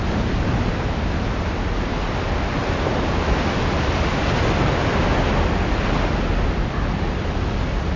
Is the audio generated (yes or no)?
no